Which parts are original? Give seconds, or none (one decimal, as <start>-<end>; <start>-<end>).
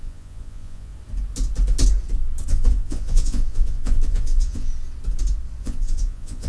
0.9-2.5; 4.7-5.6